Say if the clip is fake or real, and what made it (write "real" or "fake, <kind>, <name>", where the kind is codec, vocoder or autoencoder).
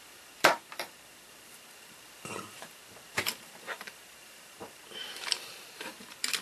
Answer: fake, vocoder, BigVGAN v2